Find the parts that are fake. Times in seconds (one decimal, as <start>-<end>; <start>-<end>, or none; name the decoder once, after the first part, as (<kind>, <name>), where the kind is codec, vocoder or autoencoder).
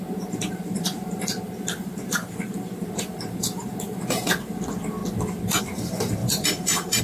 0.0-1.4 (vocoder, BigVGAN v2); 1.8-4.2; 6.2-7.0